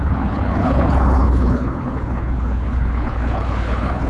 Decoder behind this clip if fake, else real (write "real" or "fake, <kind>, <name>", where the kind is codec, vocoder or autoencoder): fake, codec, HILCodec